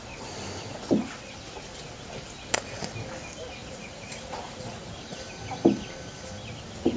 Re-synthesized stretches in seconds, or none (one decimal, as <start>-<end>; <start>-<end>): 3.6-5.0